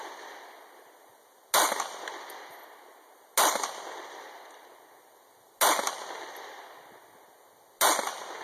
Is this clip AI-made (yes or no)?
no